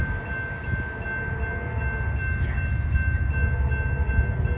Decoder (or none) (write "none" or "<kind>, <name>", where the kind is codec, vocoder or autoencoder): none